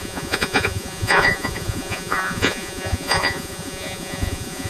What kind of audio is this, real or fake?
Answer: fake